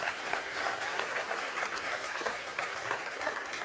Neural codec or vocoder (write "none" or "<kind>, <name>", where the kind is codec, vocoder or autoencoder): codec, SNAC